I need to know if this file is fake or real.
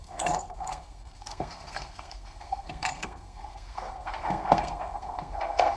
fake